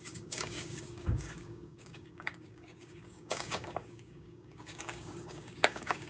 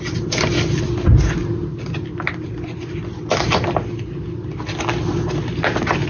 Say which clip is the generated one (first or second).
first